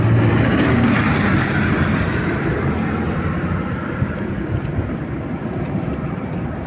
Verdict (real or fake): fake